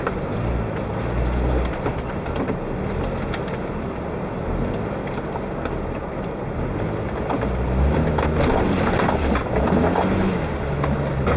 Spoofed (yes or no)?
no